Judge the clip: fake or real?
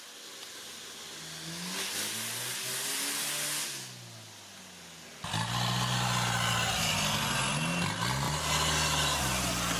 real